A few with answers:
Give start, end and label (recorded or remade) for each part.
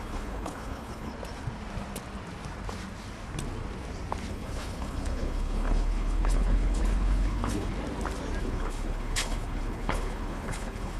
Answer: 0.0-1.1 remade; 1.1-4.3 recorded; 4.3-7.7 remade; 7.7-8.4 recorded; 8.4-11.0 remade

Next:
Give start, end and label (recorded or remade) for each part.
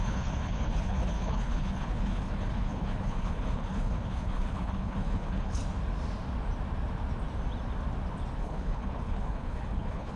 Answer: 0.0-5.6 remade; 5.6-8.4 recorded; 8.4-10.2 remade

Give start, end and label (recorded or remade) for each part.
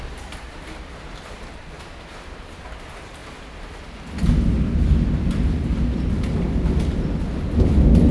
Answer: 0.0-8.1 recorded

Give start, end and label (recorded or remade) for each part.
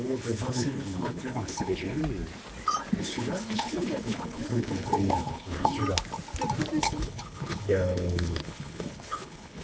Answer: 0.0-2.0 remade; 2.0-3.0 recorded; 3.0-5.8 remade; 5.8-6.8 recorded; 6.8-9.6 remade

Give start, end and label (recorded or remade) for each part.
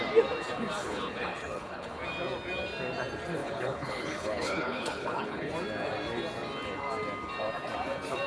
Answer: 0.0-0.8 recorded; 0.8-2.0 remade; 2.0-3.4 recorded; 3.4-5.5 remade; 5.5-8.3 recorded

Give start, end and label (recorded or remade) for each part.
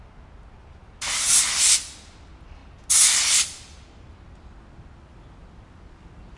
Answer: 0.0-6.4 recorded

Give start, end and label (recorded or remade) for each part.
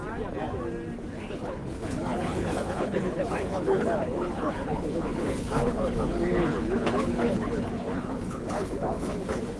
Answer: 0.0-1.1 recorded; 1.1-9.6 remade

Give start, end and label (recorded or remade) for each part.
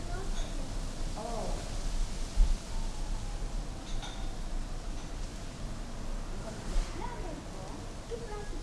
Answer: 0.0-8.6 recorded